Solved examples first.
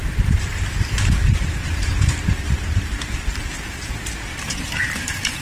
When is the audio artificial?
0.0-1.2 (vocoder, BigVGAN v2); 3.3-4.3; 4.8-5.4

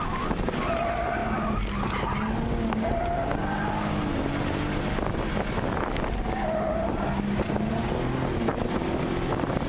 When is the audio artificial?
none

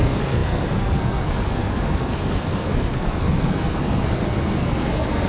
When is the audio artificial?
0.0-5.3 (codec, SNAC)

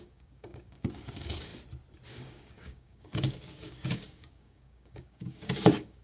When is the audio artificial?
0.0-1.5 (codec, DAC); 2.1-6.0

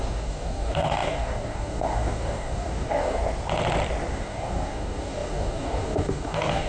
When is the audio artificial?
0.0-3.2 (codec, DAC); 4.1-6.7

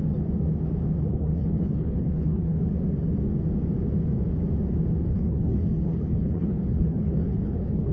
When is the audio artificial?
1.1-2.6 (codec, HILCodec); 5.1-7.9

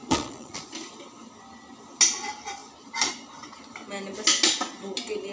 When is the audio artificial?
0.0-0.7 (vocoder, Vocos)

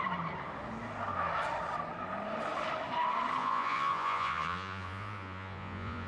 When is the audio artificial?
3.4-6.1 (vocoder, Vocos)